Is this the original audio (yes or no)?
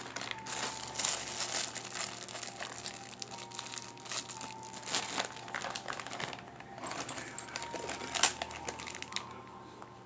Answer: yes